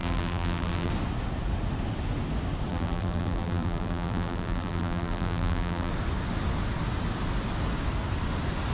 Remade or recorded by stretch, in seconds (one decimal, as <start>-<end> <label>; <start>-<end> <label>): 0.0-0.9 remade; 0.9-2.7 recorded; 2.7-5.9 remade; 5.9-8.7 recorded